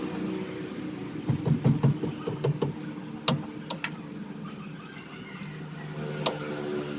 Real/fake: real